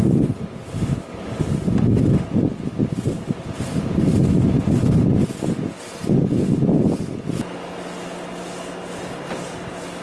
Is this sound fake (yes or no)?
no